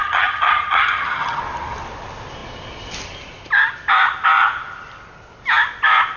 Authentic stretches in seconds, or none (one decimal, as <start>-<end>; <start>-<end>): 1.4-6.2